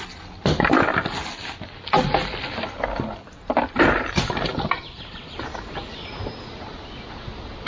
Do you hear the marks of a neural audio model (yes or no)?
no